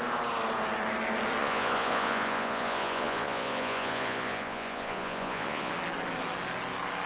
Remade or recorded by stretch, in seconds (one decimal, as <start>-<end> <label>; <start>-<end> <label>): 0.0-1.4 recorded; 1.4-5.7 remade; 5.7-7.1 recorded

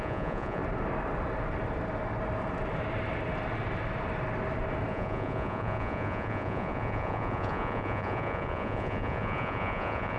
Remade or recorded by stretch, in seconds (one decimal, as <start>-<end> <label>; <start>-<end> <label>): 0.0-0.6 remade; 0.6-4.9 recorded; 4.9-10.2 remade

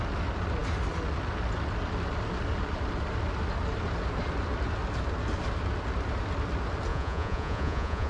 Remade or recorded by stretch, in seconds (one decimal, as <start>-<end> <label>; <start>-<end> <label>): 0.0-6.9 recorded; 6.9-8.1 remade